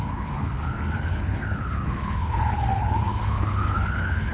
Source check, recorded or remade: remade